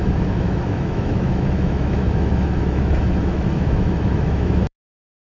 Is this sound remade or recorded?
remade